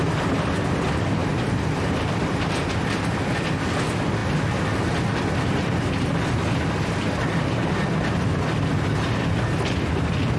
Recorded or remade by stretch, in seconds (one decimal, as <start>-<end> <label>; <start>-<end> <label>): 0.0-1.2 recorded; 1.2-2.1 remade; 2.1-10.4 recorded